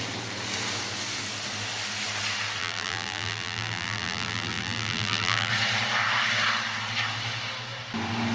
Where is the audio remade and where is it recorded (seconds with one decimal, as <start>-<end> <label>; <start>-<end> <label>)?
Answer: 0.0-2.6 recorded; 2.6-5.5 remade; 5.5-8.3 recorded